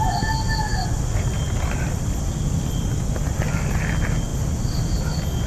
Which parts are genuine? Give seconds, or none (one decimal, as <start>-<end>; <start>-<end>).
0.0-5.5